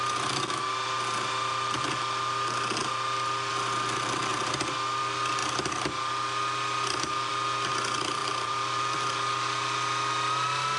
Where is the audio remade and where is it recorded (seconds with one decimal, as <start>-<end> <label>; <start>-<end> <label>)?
0.0-8.2 recorded; 8.2-9.1 remade; 9.1-10.8 recorded